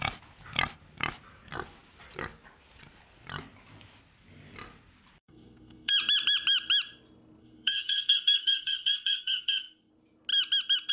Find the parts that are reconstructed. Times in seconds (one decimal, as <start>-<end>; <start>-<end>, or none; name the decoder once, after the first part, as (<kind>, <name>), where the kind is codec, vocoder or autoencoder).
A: 5.2-5.9 (codec, SNAC); 7.4-9.9